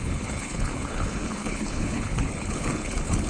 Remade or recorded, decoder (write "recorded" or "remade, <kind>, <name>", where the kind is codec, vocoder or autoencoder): remade, codec, HILCodec